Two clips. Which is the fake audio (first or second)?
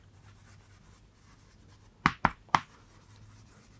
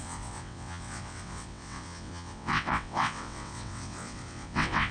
second